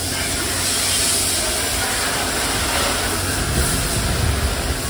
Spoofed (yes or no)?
no